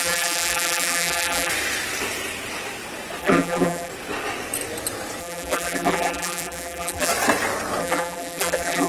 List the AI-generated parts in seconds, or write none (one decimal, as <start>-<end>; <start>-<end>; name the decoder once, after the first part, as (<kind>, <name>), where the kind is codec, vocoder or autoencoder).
0.0-1.5 (vocoder, BigVGAN v2); 3.2-3.9; 5.2-7.1; 7.8-8.9